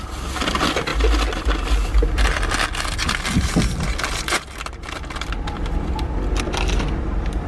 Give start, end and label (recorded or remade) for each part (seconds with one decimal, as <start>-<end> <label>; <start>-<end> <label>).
0.0-7.5 recorded